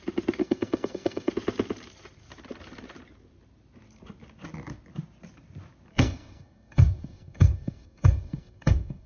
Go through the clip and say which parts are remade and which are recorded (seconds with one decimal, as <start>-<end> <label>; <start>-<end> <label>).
0.0-0.4 recorded; 0.4-1.3 remade; 1.3-5.9 recorded; 5.9-9.1 remade